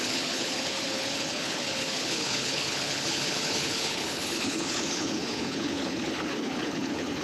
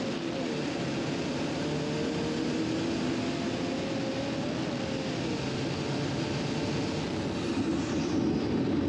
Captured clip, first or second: second